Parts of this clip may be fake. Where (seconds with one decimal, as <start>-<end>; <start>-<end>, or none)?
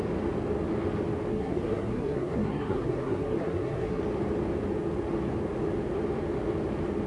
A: 1.3-4.0